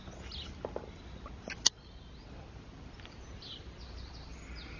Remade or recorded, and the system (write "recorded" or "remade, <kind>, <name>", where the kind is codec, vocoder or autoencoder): recorded